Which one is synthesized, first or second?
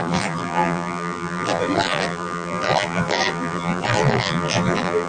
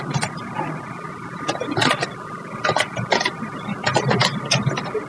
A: first